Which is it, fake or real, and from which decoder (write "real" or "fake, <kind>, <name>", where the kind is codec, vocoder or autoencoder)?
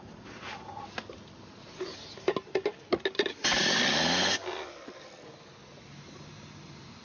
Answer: real